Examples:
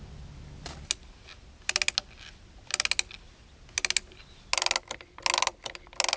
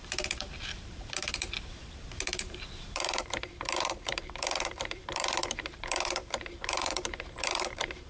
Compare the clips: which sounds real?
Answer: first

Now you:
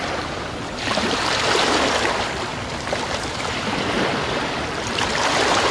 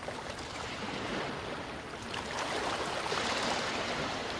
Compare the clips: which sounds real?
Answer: second